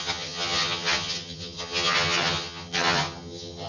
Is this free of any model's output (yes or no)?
no